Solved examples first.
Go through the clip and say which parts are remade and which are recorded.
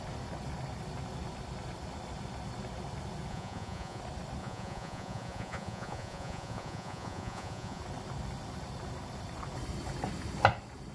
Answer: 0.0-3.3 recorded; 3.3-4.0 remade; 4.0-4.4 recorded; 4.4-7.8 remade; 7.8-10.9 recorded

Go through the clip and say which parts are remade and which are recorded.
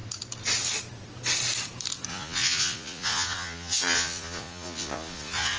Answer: 0.0-2.1 recorded; 2.1-5.6 remade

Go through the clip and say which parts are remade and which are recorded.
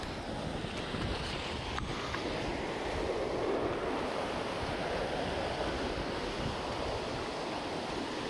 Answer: 0.0-8.3 recorded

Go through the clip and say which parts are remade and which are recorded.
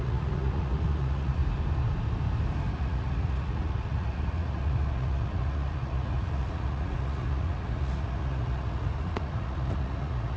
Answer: 0.0-1.4 remade; 1.4-2.7 recorded; 2.7-10.4 remade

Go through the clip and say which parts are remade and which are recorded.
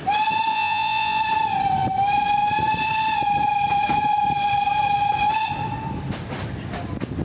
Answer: 0.0-0.5 recorded; 0.5-1.2 remade; 1.2-7.2 recorded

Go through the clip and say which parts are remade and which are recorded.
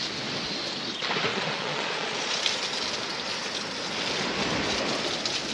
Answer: 0.0-1.3 recorded; 1.3-2.4 remade; 2.4-5.5 recorded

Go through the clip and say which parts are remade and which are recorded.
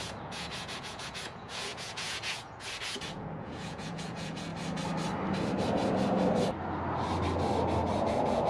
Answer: 0.0-4.5 remade; 4.5-8.0 recorded; 8.0-8.5 remade